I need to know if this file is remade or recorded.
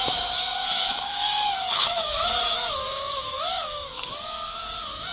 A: remade